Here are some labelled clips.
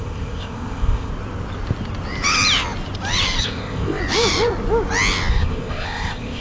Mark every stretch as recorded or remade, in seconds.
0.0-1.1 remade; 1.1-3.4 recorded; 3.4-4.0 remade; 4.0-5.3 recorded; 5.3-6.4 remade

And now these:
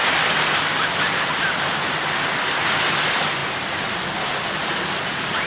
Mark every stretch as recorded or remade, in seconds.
0.0-5.5 recorded

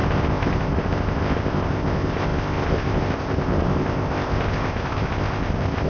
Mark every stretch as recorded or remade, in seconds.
0.0-5.9 remade

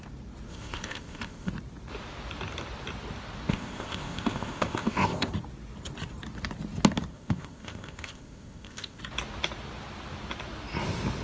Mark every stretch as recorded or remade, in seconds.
0.0-0.5 recorded; 0.5-1.5 remade; 1.5-3.5 recorded; 3.5-5.3 remade; 5.3-7.1 recorded; 7.1-9.0 remade; 9.0-11.2 recorded

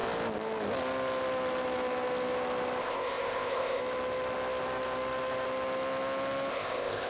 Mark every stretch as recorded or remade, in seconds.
0.0-2.8 recorded; 2.8-3.8 remade; 3.8-6.5 recorded; 6.5-7.1 remade

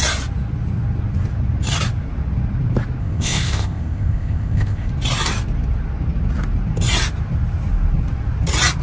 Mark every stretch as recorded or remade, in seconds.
0.0-3.0 recorded; 3.0-4.9 remade; 4.9-8.8 recorded